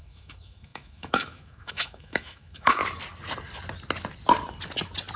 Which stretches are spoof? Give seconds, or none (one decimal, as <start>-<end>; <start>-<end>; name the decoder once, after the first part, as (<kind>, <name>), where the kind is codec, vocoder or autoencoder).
0.0-2.8 (autoencoder, DAC-VAE)